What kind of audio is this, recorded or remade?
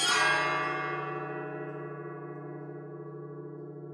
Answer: recorded